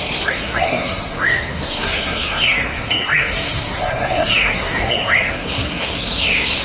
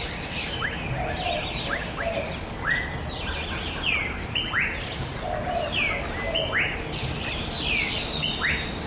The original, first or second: second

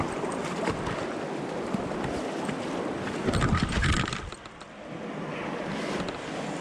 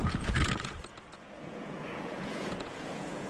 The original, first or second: first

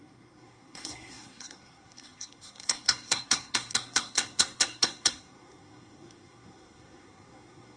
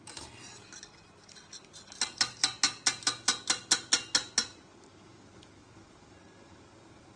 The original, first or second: second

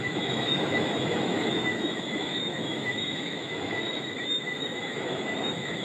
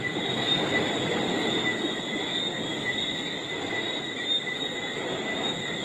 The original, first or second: second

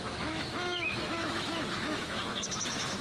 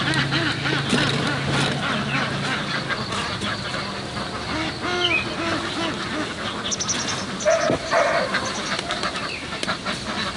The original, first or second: second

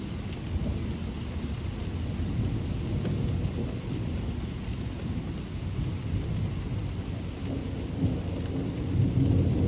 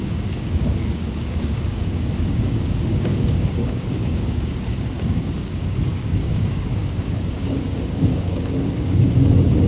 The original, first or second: first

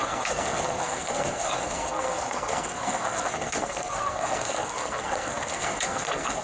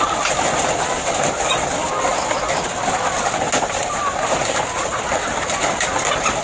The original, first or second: second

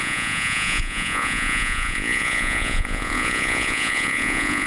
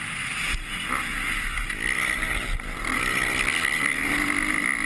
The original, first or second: second